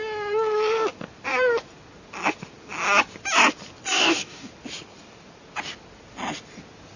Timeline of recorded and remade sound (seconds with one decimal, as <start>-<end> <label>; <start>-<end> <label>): 0.0-4.0 recorded; 4.0-4.5 remade; 4.5-7.0 recorded